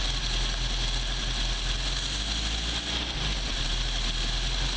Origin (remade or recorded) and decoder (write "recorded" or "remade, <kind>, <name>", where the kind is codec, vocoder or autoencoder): recorded